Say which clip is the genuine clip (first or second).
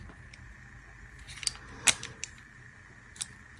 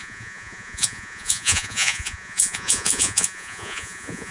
first